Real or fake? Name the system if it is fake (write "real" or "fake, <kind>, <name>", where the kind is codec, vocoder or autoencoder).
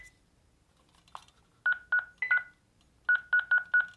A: real